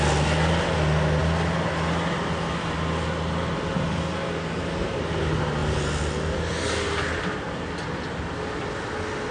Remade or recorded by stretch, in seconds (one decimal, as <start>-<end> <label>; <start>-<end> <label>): 0.0-9.3 recorded